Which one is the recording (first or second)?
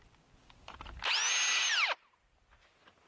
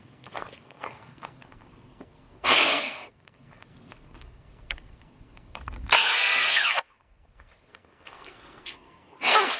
first